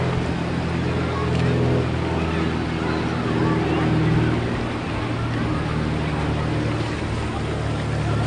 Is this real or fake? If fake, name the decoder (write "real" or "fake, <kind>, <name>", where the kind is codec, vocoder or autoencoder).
real